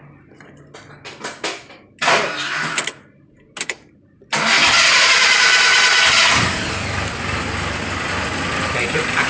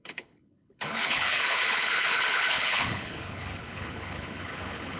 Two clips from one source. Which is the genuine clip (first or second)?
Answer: first